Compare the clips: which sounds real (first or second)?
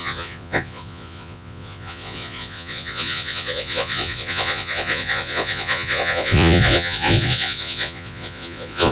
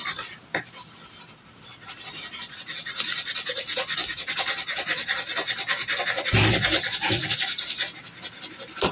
second